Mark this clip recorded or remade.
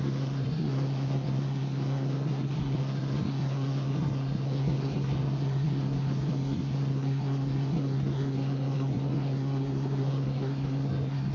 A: remade